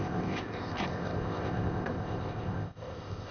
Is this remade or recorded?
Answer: remade